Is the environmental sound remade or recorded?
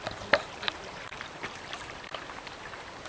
remade